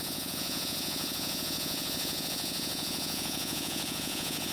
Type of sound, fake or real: fake